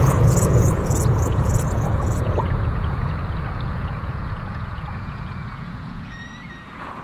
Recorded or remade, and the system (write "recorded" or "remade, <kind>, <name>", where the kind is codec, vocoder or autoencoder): remade, vocoder, Vocos